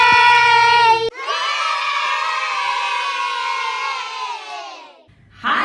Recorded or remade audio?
recorded